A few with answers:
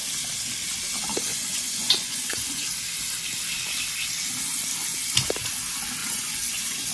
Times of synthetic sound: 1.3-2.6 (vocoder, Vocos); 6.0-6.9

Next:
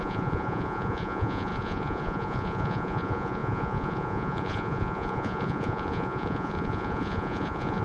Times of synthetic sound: 0.0-7.8 (vocoder, Vocos)

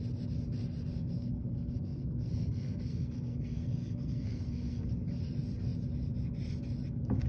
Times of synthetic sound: 0.9-4.9 (codec, SNAC)

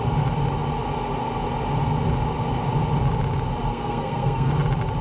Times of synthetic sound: 3.7-4.5 (codec, SNAC)

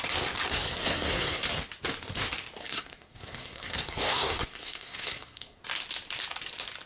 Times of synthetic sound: 0.5-1.5 (codec, SNAC); 2.6-5.6

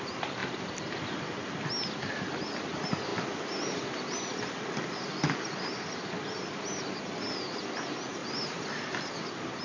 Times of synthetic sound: 8.2-9.6 (vocoder, BigVGAN v2)

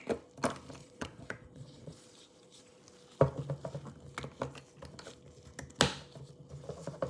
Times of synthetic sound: 0.8-2.8 (vocoder, Vocos)

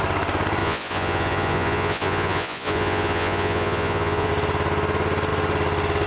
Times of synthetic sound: 0.6-4.3 (vocoder, Vocos)